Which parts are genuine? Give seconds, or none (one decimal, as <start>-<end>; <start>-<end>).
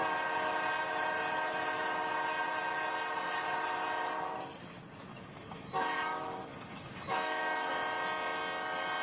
0.0-5.1; 7.7-9.0